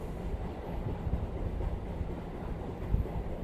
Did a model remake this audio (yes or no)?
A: no